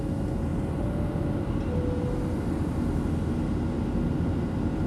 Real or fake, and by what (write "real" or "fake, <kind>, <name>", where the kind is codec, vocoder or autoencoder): real